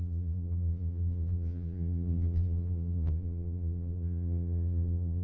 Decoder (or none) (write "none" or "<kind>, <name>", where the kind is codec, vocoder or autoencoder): vocoder, Vocos